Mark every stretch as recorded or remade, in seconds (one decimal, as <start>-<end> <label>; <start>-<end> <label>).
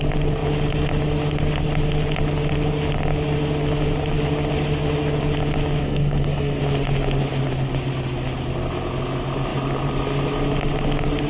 0.0-5.8 recorded; 5.8-6.6 remade; 6.6-11.3 recorded